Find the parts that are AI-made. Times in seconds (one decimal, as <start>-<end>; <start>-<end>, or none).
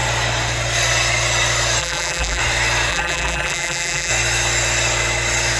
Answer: 1.8-2.4; 2.9-4.1